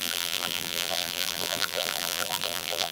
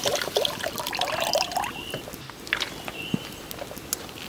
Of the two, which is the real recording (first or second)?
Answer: second